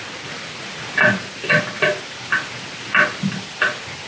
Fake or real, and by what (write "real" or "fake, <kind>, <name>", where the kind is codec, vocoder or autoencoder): real